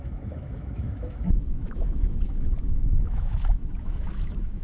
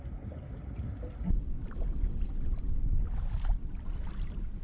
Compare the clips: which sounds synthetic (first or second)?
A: first